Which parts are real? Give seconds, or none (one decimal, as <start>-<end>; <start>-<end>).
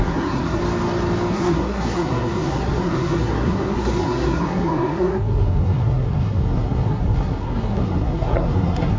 0.6-1.3